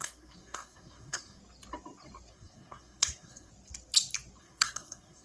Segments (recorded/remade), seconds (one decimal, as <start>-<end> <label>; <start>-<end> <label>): 0.0-1.4 remade; 1.4-2.3 recorded; 2.3-3.5 remade; 3.5-4.4 recorded; 4.4-5.2 remade